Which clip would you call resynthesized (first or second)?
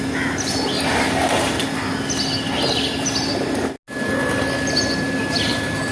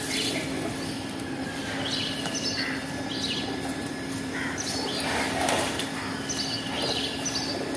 second